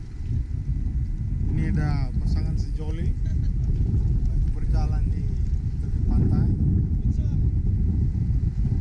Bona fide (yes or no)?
yes